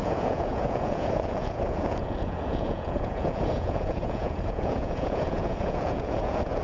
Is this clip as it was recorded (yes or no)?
no